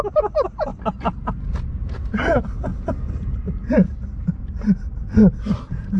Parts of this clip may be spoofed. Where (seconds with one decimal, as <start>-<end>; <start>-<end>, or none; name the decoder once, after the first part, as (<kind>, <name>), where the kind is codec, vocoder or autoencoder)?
0.0-0.7 (vocoder, BigVGAN v2); 1.5-6.0